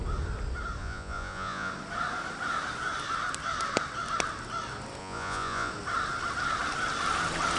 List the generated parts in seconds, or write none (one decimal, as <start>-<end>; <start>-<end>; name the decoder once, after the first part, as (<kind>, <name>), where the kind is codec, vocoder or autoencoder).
0.8-1.7 (vocoder, Vocos); 5.0-5.7